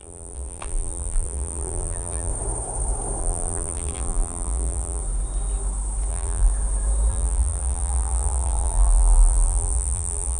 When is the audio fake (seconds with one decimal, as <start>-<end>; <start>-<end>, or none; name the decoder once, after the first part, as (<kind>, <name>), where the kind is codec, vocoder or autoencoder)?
0.0-2.3 (vocoder, BigVGAN v2); 3.2-5.0; 6.1-6.5; 7.1-10.4